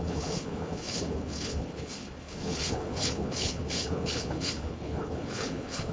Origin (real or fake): fake